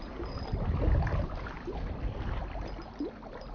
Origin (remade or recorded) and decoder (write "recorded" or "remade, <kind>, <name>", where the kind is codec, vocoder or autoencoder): recorded